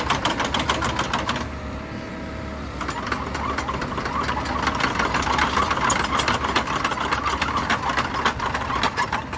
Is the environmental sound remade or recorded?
recorded